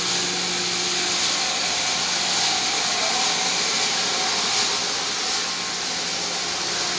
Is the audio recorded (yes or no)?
yes